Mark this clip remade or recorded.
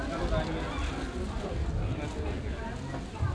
recorded